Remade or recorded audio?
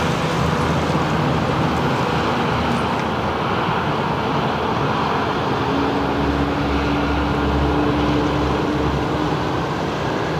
recorded